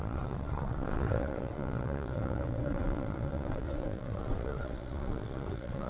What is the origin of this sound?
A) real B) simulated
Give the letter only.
B